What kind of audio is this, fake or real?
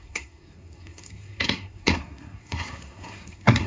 fake